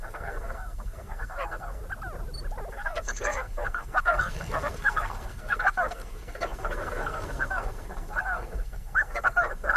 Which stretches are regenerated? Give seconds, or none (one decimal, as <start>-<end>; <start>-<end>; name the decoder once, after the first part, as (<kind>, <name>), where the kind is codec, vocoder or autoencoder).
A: 0.0-1.8 (codec, SNAC); 2.7-9.8